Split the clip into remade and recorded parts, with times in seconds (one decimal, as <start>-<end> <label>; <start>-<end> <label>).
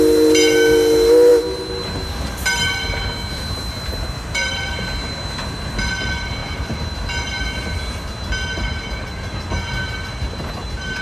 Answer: 0.0-11.0 recorded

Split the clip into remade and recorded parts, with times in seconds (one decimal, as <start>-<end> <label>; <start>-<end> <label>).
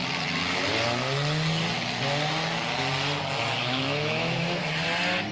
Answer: 0.0-3.6 recorded; 3.6-4.6 remade; 4.6-5.3 recorded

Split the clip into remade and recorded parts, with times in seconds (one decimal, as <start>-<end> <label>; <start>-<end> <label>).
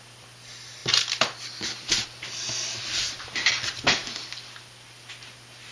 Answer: 0.0-5.7 recorded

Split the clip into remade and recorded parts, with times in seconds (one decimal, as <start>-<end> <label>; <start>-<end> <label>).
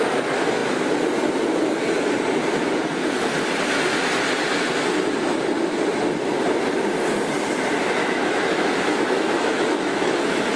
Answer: 0.0-8.0 recorded; 8.0-10.6 remade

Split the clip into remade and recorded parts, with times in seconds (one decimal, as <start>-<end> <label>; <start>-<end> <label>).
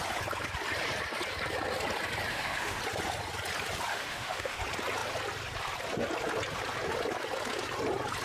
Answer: 0.0-2.3 recorded; 2.3-2.8 remade; 2.8-3.9 recorded; 3.9-4.6 remade; 4.6-8.2 recorded